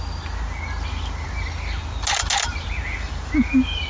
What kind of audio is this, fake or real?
real